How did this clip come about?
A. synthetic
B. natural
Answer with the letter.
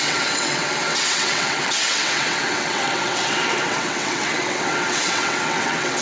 A